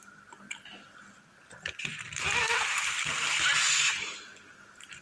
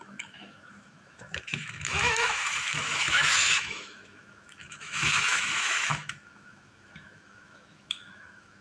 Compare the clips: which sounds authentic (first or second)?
first